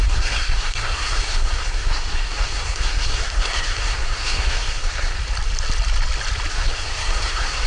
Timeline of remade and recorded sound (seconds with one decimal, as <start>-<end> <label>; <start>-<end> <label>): 0.0-5.2 remade; 5.2-6.5 recorded; 6.5-7.7 remade